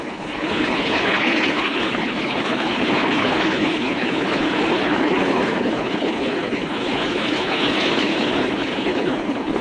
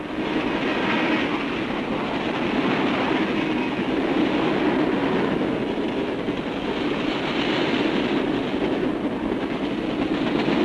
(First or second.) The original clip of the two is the second